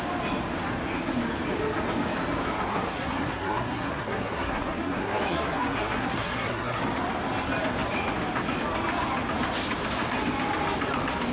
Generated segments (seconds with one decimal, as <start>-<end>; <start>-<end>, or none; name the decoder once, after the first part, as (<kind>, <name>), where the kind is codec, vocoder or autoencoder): 2.7-6.8 (codec, SNAC)